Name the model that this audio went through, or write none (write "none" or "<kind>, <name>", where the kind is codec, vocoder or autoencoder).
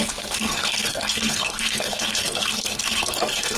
codec, SNAC